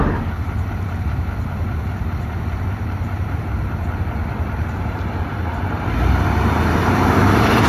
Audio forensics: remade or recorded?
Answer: remade